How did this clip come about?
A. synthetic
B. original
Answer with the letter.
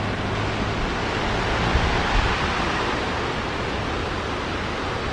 B